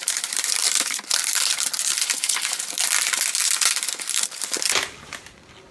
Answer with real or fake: fake